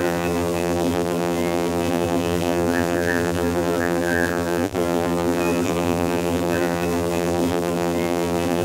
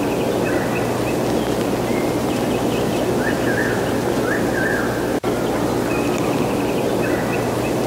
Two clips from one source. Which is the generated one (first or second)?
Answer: first